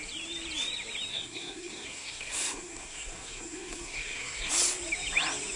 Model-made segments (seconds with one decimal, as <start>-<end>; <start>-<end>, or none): 1.1-4.5